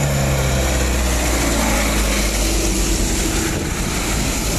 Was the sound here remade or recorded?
recorded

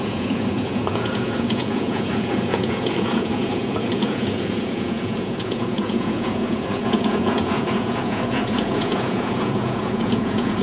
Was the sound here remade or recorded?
remade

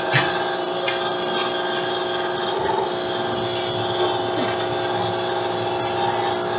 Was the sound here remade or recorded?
recorded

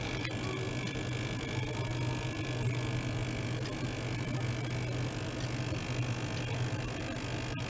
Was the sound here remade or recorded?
recorded